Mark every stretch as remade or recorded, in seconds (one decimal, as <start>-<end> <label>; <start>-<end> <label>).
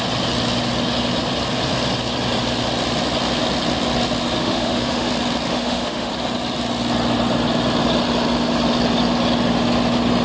0.0-4.4 recorded; 4.4-5.1 remade; 5.1-5.5 recorded; 5.5-6.1 remade; 6.1-10.2 recorded